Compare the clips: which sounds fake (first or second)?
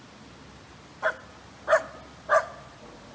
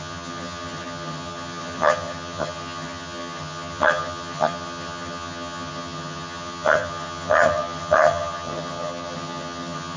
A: second